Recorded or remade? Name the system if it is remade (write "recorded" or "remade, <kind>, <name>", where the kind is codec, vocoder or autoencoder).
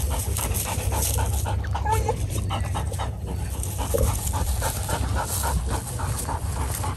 recorded